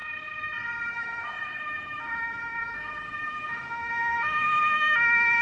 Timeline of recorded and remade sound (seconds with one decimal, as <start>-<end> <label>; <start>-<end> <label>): 0.0-0.9 recorded; 0.9-5.4 remade